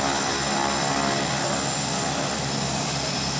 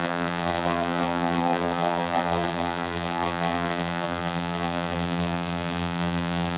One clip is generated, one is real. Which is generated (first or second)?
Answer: second